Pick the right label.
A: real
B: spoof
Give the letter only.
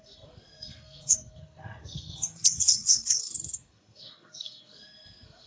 B